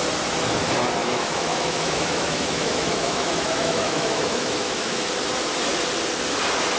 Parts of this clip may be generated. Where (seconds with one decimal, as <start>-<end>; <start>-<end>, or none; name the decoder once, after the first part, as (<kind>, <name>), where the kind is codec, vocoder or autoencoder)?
1.0-5.1 (autoencoder, DAC-VAE)